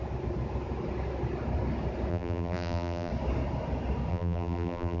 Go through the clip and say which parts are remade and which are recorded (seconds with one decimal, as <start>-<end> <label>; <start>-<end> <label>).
0.0-2.1 recorded; 2.1-3.1 remade; 3.1-4.1 recorded; 4.1-5.0 remade